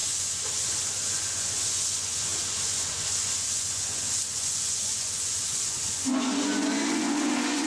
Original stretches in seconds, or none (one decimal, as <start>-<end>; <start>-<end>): none